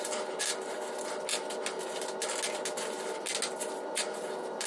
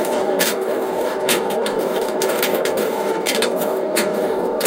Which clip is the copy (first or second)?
second